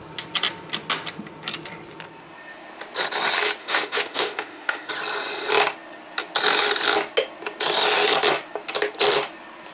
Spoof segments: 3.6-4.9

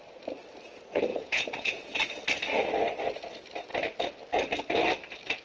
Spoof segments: 1.1-2.0

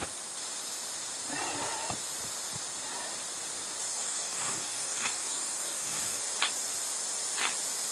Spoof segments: 3.9-6.2

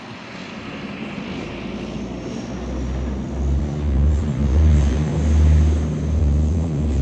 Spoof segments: 0.0-0.4; 3.6-5.1; 6.2-7.0

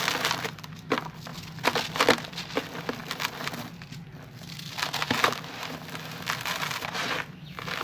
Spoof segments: none

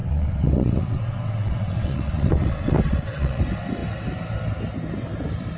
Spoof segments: 0.0-3.4